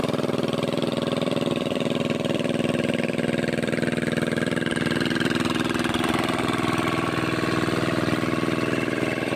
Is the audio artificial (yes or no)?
yes